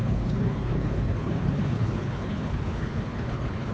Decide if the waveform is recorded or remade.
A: remade